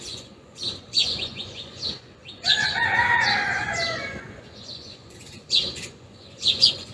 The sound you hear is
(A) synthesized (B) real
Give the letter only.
A